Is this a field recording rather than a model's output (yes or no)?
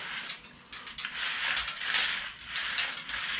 yes